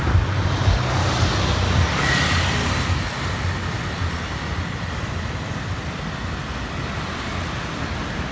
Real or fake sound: real